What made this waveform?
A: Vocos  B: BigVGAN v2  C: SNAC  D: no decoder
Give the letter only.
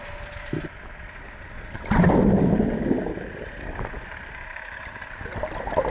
D